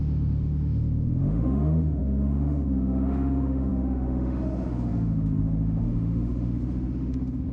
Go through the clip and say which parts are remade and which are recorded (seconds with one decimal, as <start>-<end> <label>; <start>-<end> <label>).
0.0-7.5 remade